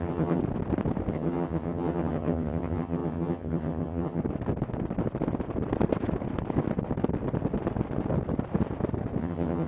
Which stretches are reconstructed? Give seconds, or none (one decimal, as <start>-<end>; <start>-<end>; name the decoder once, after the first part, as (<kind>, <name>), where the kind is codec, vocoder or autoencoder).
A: 0.0-0.4 (vocoder, HiFi-GAN); 1.1-4.2; 9.2-9.7